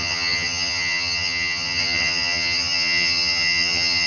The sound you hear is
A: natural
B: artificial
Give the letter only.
B